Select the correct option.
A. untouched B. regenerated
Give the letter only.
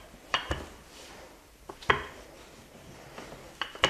B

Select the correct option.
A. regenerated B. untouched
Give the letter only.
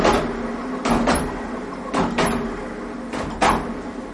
B